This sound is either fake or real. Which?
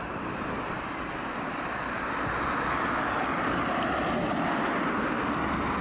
real